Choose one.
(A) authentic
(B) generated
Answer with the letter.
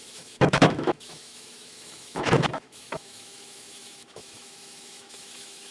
B